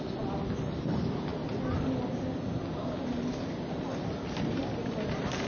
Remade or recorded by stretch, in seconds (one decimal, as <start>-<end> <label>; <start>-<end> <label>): 0.0-5.5 recorded